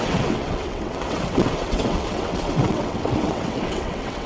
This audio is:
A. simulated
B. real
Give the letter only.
A